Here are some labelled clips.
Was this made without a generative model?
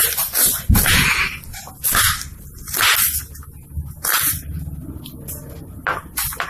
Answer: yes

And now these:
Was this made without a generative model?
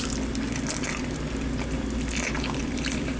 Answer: yes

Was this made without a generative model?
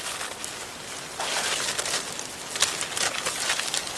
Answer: yes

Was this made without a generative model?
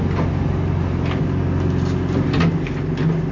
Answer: yes